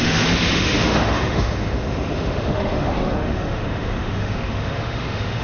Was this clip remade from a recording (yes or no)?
yes